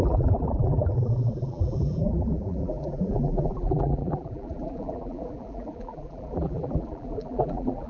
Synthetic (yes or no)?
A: yes